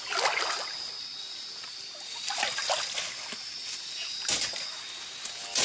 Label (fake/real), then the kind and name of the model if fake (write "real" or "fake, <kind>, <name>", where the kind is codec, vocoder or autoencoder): real